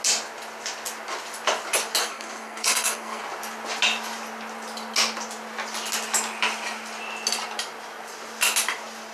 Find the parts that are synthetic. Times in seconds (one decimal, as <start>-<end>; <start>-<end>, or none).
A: 2.0-3.2